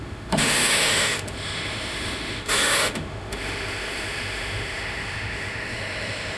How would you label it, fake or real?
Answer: fake